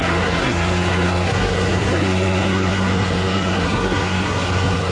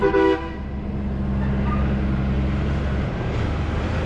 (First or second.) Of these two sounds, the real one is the second